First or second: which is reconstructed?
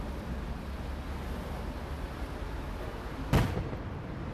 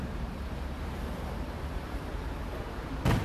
second